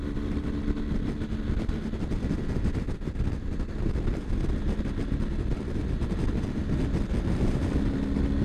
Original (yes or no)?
yes